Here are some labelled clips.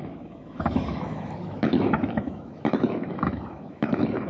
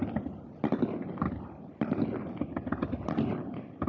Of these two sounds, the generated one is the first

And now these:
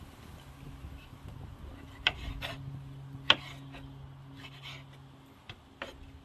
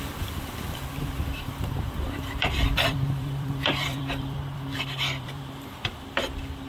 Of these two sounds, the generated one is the second